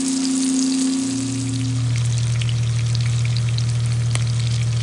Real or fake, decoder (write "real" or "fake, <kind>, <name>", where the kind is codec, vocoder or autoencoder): real